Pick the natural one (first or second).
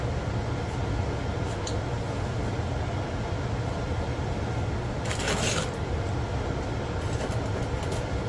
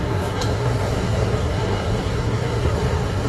first